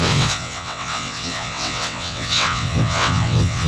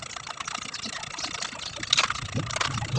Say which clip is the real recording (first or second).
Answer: second